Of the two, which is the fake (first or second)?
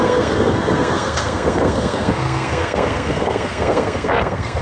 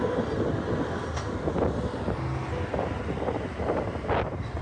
first